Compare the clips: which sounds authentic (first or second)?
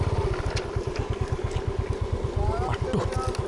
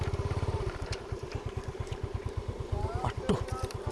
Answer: first